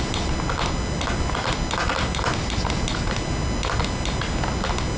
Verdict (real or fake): real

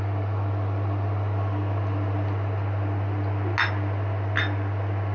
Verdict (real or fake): real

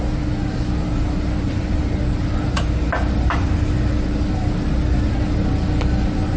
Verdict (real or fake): real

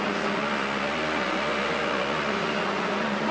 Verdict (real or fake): fake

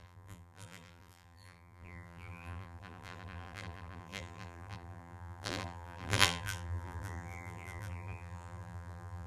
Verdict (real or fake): fake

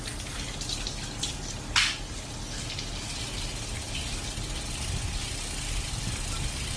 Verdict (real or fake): real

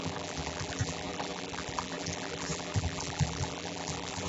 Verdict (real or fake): fake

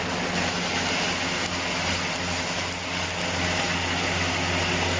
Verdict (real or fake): real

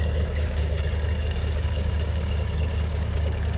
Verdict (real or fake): fake